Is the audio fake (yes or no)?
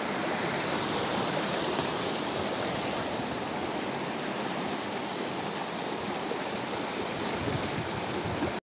no